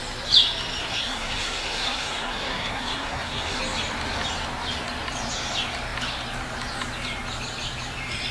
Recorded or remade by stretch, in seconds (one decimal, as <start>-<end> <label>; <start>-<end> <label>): 0.0-0.8 recorded; 0.8-3.6 remade; 3.6-8.3 recorded